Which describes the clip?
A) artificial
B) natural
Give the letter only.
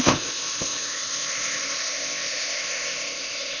A